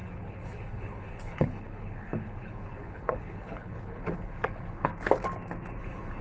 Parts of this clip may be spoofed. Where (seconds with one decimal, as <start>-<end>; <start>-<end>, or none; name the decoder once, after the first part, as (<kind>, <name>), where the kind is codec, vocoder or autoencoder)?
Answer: 0.0-4.9 (codec, HILCodec); 5.8-6.2